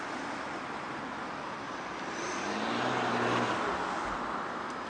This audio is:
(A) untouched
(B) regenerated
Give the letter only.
A